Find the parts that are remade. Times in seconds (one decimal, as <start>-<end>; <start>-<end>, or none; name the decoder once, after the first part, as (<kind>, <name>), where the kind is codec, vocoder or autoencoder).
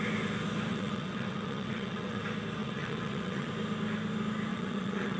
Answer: 0.7-2.2 (vocoder, WaveNeXt); 2.6-3.5; 4.5-5.2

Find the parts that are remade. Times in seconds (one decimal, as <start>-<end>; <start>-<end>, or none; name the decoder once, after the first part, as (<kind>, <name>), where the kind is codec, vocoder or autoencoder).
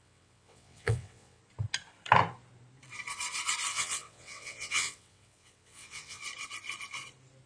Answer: 0.0-1.4 (vocoder, WaveNeXt); 3.7-6.2